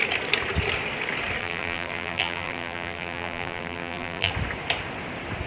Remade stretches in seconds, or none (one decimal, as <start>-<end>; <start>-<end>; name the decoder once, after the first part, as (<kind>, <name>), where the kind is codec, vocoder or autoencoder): 1.4-4.3 (vocoder, BigVGAN v2)